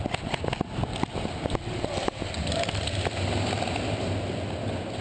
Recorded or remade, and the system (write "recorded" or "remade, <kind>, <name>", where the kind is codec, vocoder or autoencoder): recorded